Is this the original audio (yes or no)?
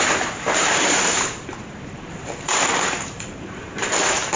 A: no